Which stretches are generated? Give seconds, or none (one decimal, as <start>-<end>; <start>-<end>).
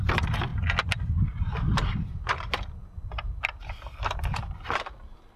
none